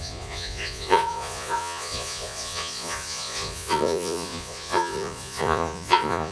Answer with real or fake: fake